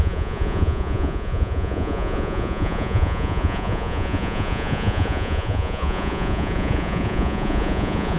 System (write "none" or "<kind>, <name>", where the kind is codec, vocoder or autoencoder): vocoder, Vocos